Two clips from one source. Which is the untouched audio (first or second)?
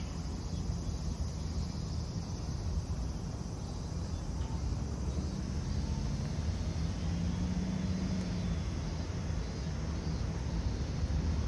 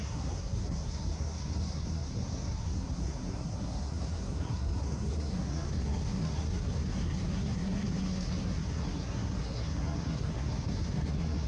first